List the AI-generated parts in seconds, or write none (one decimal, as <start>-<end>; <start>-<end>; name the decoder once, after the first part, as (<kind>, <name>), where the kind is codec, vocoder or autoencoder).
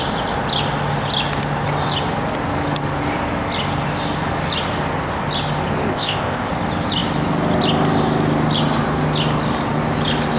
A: 5.9-6.5 (codec, ZipCodec)